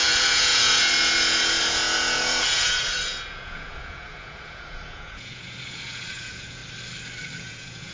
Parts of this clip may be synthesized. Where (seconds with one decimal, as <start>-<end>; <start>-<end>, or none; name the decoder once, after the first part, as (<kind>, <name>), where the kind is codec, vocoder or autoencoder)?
0.0-6.6 (vocoder, Vocos); 7.4-7.9